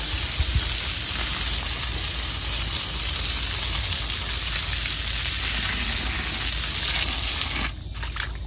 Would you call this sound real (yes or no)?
yes